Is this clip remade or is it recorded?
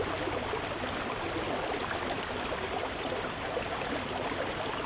remade